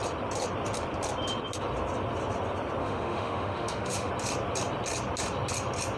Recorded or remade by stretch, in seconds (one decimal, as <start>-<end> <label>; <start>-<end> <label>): 0.0-2.8 recorded; 2.8-4.1 remade; 4.1-6.0 recorded